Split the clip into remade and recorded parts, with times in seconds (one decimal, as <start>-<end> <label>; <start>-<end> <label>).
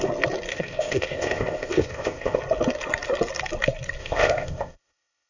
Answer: 0.0-0.5 recorded; 0.5-2.4 remade; 2.4-4.0 recorded; 4.0-5.3 remade